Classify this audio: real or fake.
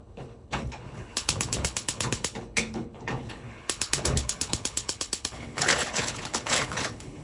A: fake